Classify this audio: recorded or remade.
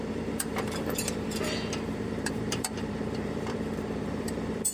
remade